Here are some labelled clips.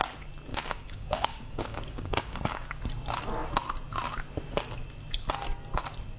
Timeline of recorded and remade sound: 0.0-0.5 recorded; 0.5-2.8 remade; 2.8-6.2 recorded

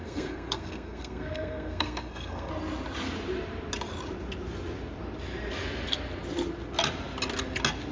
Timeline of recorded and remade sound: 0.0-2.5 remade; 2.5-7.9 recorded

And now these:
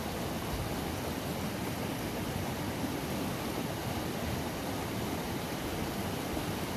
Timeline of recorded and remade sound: 0.0-6.8 recorded

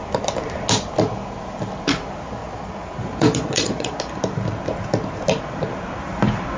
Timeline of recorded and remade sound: 0.0-2.4 recorded; 2.4-4.0 remade; 4.0-6.6 recorded